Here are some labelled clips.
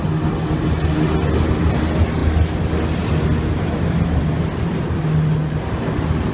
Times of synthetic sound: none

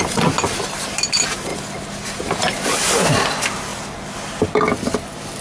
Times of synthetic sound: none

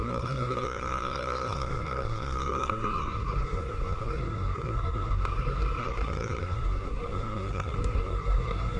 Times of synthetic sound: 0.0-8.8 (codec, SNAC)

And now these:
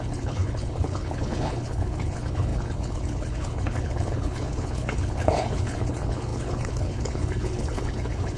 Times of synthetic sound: 0.0-8.4 (codec, HILCodec)

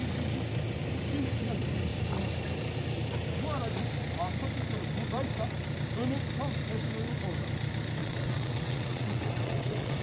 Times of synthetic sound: 8.0-10.0 (vocoder, WaveNeXt)

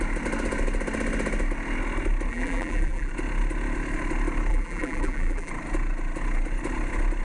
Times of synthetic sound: 2.3-3.1 (vocoder, BigVGAN v2); 4.5-5.5

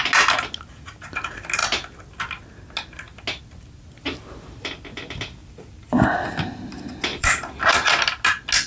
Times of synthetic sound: 7.1-7.7 (vocoder, BigVGAN v2)

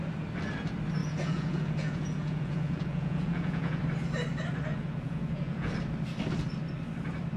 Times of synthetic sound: 1.0-3.8 (vocoder, Vocos); 4.7-5.7